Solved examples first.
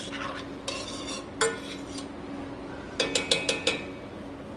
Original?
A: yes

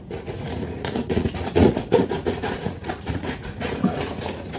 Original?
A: no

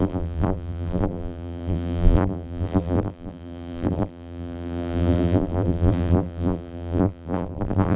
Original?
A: no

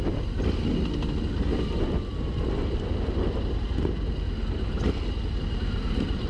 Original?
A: yes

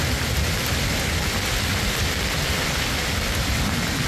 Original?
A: yes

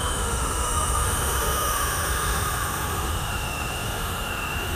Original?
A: no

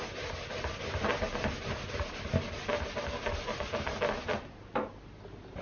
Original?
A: yes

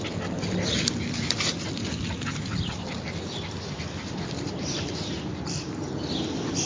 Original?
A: yes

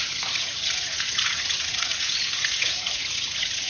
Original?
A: no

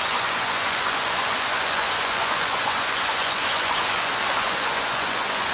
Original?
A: no